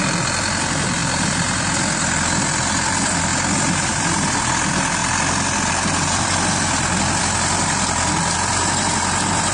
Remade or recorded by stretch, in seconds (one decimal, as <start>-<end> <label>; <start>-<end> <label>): 0.0-9.5 recorded